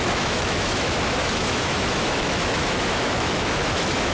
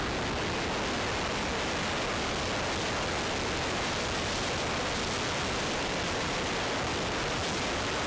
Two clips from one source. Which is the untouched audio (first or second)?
second